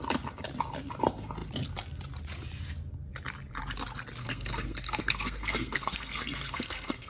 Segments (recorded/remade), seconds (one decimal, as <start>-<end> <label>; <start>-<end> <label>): 0.0-4.2 recorded; 4.2-7.1 remade